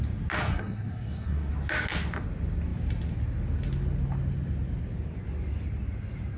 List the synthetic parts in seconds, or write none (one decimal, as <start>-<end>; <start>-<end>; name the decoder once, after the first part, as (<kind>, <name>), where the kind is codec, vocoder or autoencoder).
0.5-1.5 (codec, SNAC)